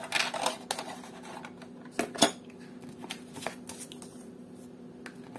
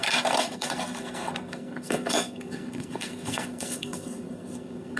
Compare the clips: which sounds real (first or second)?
first